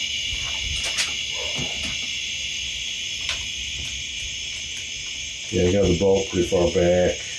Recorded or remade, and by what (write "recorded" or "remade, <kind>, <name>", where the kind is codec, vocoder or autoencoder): recorded